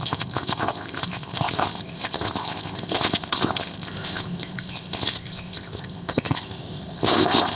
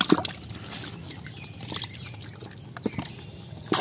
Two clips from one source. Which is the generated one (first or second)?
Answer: first